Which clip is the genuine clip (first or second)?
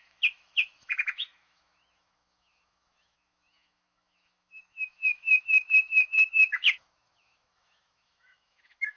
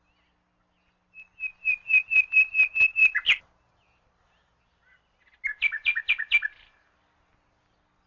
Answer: second